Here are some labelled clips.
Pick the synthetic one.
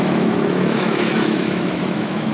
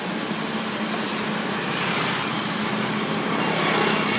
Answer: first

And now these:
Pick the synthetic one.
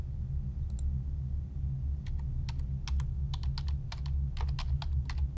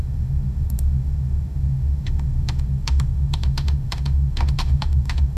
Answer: second